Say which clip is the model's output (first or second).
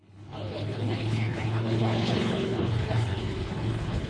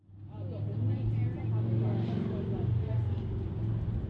first